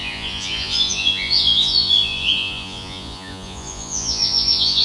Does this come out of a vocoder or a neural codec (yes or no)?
yes